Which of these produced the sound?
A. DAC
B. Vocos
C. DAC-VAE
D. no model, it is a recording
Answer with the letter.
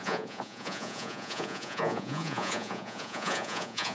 B